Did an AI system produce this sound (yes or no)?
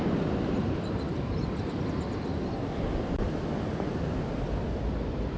no